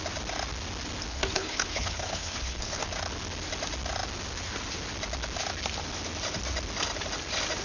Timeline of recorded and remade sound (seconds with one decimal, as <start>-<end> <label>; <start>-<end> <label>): 0.0-1.1 recorded; 1.1-2.8 remade; 2.8-7.6 recorded